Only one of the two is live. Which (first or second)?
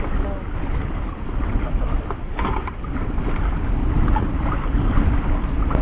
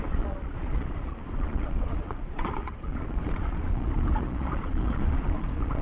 first